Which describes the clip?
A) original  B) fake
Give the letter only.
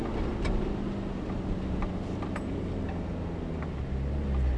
A